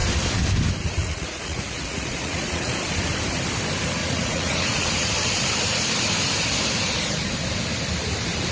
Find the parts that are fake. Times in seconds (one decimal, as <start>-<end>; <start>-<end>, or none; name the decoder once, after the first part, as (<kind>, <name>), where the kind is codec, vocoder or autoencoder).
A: 1.0-2.7 (vocoder, Vocos); 4.0-5.1